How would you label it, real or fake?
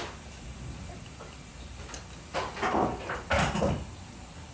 real